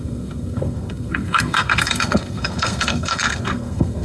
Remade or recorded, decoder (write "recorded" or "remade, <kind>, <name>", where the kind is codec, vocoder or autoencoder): remade, codec, SNAC